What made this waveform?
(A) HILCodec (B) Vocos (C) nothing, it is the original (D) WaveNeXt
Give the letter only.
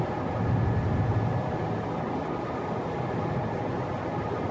C